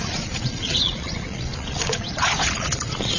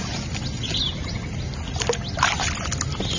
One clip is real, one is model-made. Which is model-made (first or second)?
first